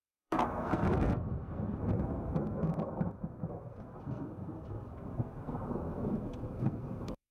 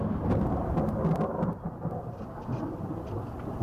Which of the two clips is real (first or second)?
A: second